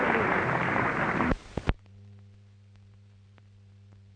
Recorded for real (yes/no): no